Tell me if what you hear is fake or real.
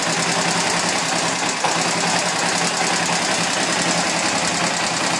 real